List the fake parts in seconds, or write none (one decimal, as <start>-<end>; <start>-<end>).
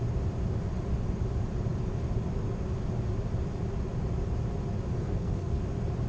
5.0-5.6